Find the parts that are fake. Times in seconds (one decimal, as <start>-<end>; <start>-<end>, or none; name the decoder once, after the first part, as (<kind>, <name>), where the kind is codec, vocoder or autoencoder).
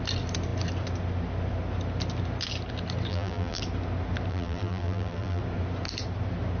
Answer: 3.1-3.6 (vocoder, BigVGAN v2); 4.3-5.4